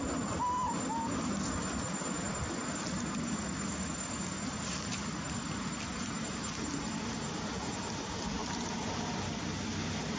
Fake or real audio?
real